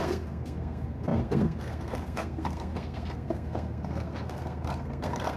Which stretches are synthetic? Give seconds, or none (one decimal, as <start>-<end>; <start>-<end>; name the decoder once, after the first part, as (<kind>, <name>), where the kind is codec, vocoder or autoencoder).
0.0-5.4 (codec, SNAC)